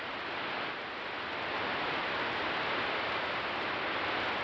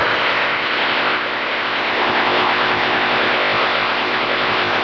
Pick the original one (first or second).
first